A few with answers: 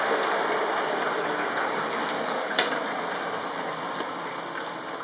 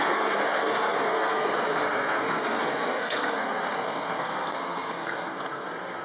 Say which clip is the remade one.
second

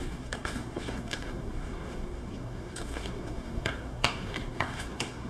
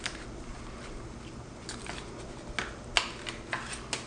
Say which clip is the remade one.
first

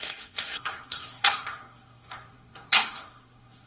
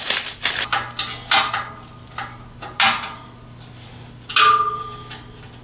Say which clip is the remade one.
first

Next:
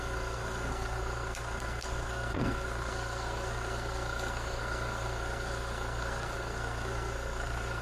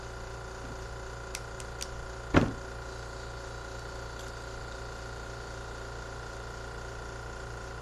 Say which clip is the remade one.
first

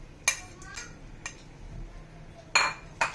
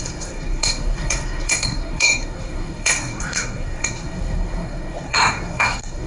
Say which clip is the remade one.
second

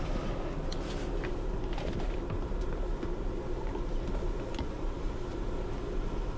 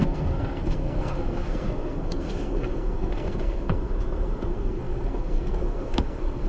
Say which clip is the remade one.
second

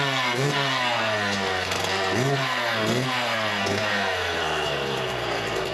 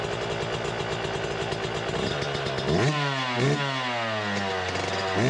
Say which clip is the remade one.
first